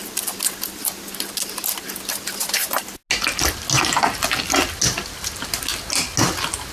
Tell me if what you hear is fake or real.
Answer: real